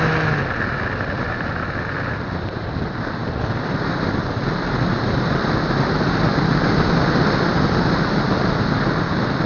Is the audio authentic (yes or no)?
yes